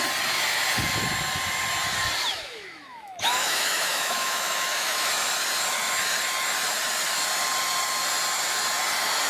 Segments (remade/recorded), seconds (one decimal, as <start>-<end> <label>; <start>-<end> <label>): 0.0-2.3 recorded; 2.3-5.1 remade; 5.1-9.3 recorded